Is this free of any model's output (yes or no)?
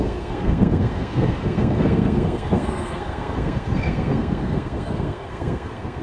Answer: no